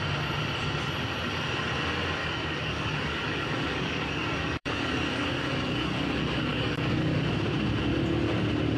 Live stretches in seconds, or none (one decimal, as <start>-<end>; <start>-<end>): 0.0-2.2; 7.3-8.8